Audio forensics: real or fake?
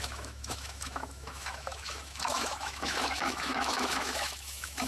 fake